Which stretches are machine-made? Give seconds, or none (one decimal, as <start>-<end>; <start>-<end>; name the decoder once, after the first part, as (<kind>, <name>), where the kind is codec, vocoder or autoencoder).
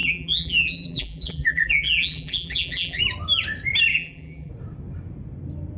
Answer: 0.0-3.0 (vocoder, BigVGAN v2); 3.9-4.5